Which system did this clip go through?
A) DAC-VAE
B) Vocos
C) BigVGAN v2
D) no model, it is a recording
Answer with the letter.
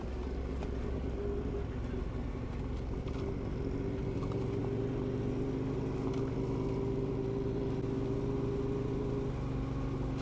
D